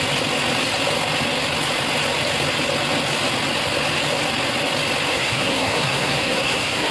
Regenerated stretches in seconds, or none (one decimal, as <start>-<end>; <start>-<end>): 5.1-6.9